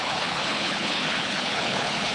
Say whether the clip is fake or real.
fake